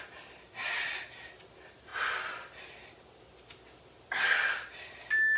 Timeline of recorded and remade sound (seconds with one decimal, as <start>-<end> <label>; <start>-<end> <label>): 0.0-5.4 recorded